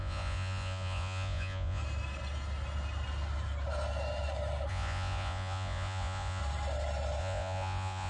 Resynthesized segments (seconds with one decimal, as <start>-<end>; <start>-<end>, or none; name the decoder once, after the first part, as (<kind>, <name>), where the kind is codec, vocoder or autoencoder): 0.0-1.8 (vocoder, Vocos); 4.7-6.4; 7.2-8.1